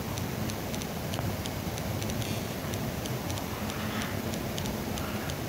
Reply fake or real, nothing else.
real